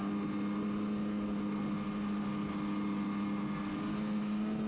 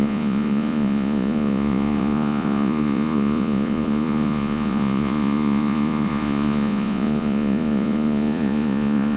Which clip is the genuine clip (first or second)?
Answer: first